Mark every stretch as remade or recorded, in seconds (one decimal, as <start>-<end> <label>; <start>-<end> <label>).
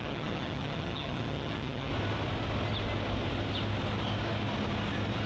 0.0-1.9 remade; 1.9-5.3 recorded